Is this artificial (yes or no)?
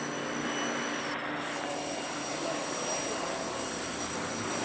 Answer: no